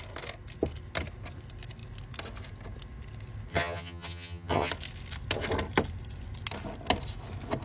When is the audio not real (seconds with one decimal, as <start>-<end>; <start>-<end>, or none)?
3.5-4.7